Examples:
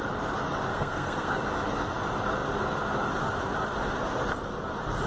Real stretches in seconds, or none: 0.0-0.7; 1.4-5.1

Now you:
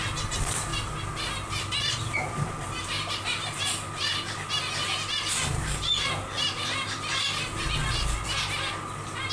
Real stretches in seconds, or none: 0.0-2.8; 4.6-6.3; 7.2-9.3

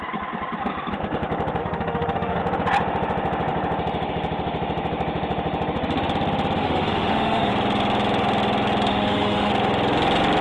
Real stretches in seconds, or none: 0.0-1.6; 2.4-6.6; 7.5-8.9; 9.5-10.4

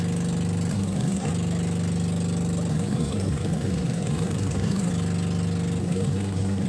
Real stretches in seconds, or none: 0.0-0.7; 1.3-2.7; 4.9-5.8

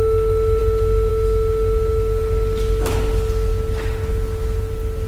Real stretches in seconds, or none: 0.0-5.1

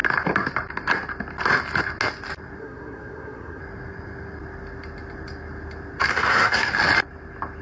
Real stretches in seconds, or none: 0.0-2.6; 3.6-6.1; 6.7-7.6

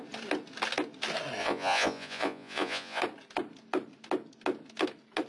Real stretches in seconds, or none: 0.0-1.4; 3.0-5.3

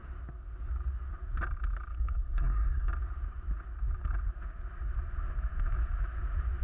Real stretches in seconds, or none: 0.0-1.9; 2.9-6.6